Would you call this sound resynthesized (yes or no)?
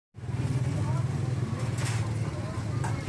no